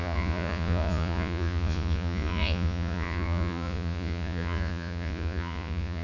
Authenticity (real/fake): fake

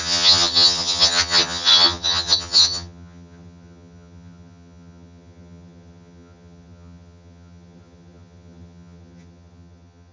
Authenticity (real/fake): fake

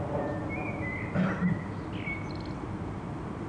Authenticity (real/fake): real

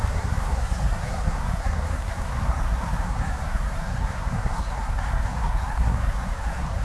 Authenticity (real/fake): fake